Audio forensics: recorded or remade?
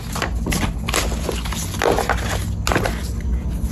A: recorded